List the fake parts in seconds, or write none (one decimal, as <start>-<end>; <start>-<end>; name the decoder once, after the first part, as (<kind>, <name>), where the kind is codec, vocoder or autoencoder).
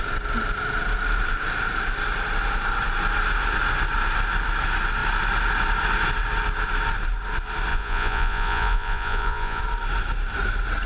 7.7-9.6 (vocoder, Vocos)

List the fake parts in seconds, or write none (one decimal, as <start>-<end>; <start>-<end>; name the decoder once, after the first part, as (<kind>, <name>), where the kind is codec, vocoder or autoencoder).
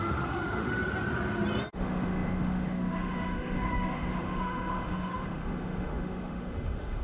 0.0-0.8 (autoencoder, DAC-VAE); 1.7-7.0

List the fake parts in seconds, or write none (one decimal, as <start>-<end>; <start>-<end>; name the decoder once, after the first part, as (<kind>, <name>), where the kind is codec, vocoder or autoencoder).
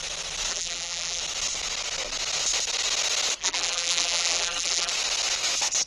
0.5-1.2 (vocoder, BigVGAN v2); 3.4-4.9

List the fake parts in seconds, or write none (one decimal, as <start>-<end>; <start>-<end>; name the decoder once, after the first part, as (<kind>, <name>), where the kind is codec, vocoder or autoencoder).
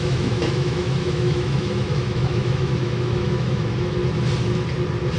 0.0-4.0 (autoencoder, DAC-VAE)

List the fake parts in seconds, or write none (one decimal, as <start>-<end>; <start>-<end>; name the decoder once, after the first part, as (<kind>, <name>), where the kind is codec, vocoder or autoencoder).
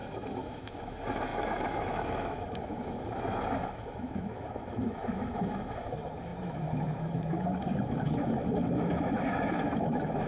0.0-10.3 (autoencoder, DAC-VAE)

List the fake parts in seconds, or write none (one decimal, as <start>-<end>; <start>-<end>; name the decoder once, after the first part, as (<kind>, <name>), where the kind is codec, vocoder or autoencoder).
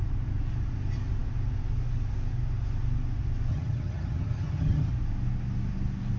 3.5-4.9 (vocoder, HiFi-GAN)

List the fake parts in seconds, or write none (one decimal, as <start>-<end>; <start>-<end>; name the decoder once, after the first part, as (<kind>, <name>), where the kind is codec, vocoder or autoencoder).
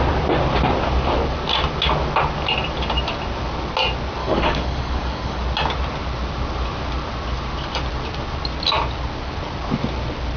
4.2-5.4 (codec, DAC)